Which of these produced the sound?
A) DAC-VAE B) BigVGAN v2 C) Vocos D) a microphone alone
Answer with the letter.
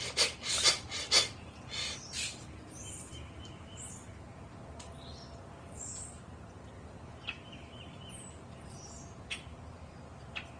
D